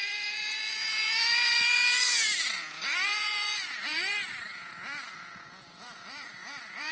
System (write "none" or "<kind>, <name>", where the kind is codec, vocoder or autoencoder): vocoder, Vocos